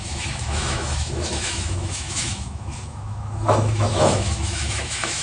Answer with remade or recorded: remade